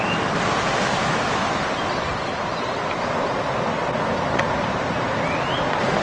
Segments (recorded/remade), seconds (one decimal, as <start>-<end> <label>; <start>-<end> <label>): 0.0-1.0 recorded; 1.0-1.6 remade; 1.6-6.0 recorded